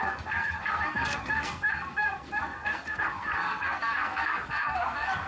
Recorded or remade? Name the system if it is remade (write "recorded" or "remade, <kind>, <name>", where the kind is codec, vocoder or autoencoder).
remade, codec, SNAC